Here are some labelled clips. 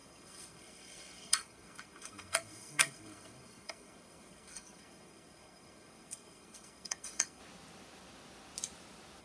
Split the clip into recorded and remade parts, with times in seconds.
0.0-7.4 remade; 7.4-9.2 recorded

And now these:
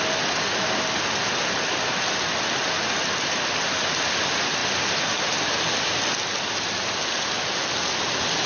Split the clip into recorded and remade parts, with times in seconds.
0.0-8.5 recorded

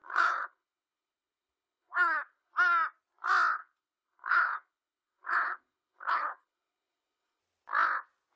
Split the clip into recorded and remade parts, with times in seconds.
0.0-2.5 remade; 2.5-3.6 recorded; 3.6-7.4 remade; 7.4-8.4 recorded

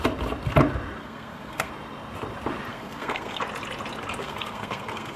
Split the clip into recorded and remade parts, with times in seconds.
0.0-1.0 recorded; 1.0-1.7 remade; 1.7-2.7 recorded; 2.7-3.4 remade; 3.4-4.2 recorded; 4.2-5.2 remade

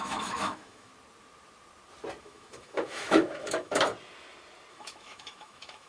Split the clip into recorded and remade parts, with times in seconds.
0.0-0.9 remade; 0.9-2.2 recorded; 2.2-3.9 remade; 3.9-4.7 recorded; 4.7-5.9 remade

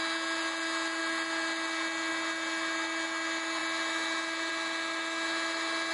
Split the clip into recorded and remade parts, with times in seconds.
0.0-5.9 recorded

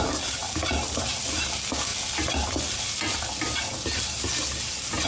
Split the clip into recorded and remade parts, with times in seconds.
0.0-0.4 recorded; 0.4-1.2 remade; 1.2-5.1 recorded